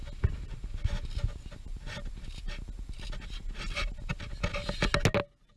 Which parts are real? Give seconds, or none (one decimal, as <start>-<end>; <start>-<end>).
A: 0.0-5.6